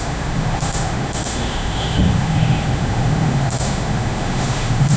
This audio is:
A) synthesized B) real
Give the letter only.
A